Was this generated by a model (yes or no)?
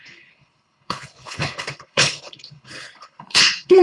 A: yes